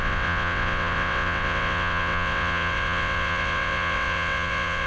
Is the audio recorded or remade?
remade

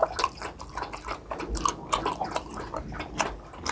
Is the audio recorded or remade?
recorded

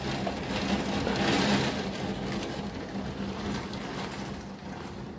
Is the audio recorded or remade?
recorded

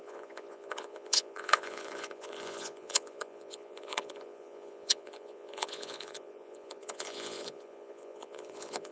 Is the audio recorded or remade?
remade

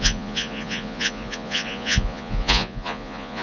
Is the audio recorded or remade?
remade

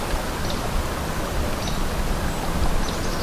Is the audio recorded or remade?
recorded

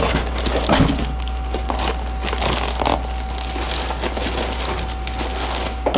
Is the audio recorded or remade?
recorded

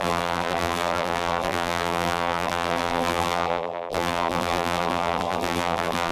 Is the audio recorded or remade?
remade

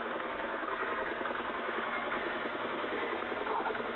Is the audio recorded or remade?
remade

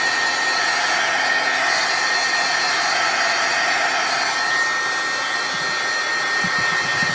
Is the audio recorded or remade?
recorded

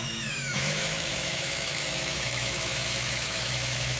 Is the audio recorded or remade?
remade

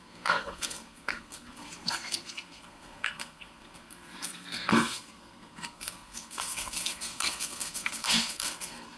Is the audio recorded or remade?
remade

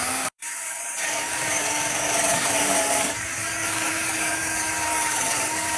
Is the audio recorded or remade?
remade